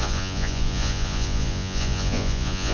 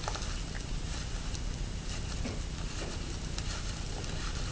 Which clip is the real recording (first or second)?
second